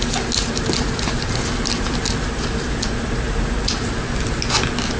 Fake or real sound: real